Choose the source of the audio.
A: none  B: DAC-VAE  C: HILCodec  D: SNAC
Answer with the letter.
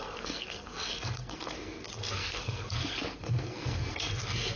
D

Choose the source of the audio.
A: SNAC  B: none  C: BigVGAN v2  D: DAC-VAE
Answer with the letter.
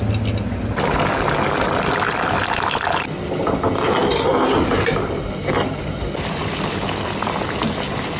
B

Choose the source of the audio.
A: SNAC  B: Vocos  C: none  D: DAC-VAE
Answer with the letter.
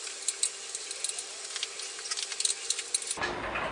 C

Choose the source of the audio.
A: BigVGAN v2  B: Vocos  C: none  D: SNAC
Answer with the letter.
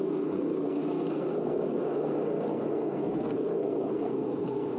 D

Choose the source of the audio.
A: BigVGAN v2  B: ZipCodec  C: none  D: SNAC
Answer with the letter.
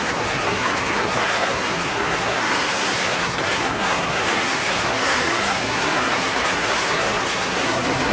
D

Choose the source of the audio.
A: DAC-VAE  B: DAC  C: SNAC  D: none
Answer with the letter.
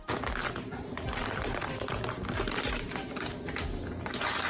D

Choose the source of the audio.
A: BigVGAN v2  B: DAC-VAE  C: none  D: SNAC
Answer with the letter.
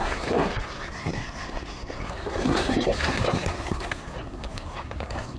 D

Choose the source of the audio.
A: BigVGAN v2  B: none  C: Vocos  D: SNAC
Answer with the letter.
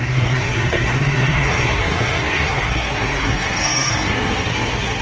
D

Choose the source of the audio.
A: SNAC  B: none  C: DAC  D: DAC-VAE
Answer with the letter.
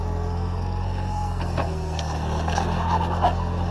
A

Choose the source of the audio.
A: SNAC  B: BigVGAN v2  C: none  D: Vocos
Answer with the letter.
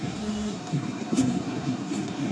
A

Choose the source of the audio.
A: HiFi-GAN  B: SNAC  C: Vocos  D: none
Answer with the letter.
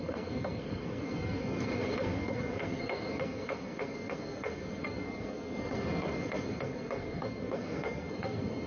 B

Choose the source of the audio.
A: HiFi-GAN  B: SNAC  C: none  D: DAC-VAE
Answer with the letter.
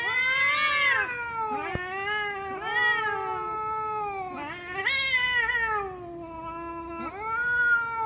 C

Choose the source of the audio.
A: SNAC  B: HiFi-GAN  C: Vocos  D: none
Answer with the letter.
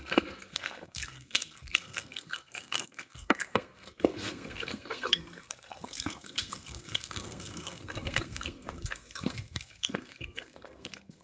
A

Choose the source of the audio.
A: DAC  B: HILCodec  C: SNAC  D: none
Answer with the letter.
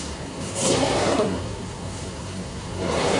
C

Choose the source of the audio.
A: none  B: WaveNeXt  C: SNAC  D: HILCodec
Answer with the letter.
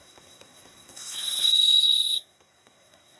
C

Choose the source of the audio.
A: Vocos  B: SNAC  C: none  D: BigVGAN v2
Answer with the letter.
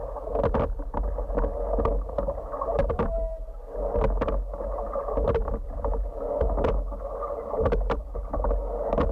C